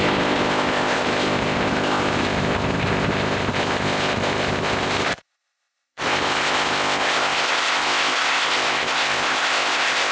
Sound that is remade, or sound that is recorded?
remade